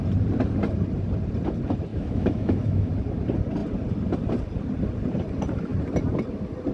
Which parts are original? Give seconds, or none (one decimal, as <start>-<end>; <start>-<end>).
0.0-1.9; 2.9-6.7